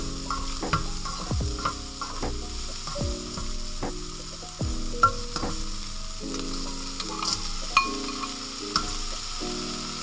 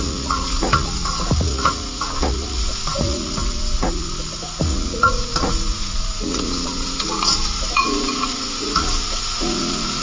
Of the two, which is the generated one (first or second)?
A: second